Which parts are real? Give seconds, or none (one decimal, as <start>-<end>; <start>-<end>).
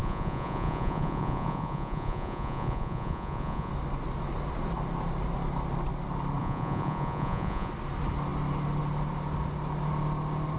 3.7-6.4; 7.7-10.6